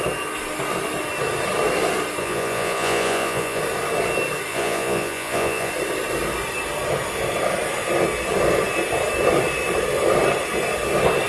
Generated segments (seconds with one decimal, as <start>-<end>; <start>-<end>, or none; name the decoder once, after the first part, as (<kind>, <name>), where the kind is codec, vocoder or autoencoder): 2.2-3.6 (vocoder, Vocos); 4.5-5.7